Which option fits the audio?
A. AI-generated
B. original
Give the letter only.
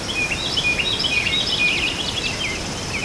B